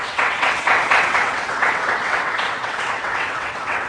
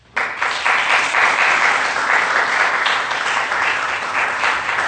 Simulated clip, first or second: first